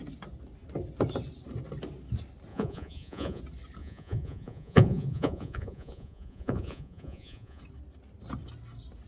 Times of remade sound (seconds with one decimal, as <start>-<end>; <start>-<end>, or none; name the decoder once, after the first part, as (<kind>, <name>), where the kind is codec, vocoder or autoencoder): 2.5-3.4 (vocoder, Vocos); 3.8-7.6